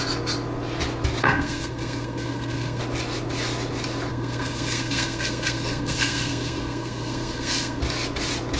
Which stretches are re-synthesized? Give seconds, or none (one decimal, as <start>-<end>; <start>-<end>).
1.2-2.8; 4.1-7.8